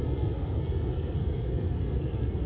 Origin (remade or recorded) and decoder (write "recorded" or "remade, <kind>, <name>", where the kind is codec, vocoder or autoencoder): remade, codec, SNAC